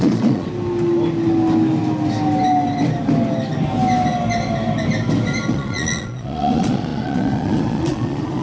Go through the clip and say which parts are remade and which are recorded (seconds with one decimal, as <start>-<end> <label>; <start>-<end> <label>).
0.0-0.5 remade; 0.5-5.5 recorded; 5.5-8.4 remade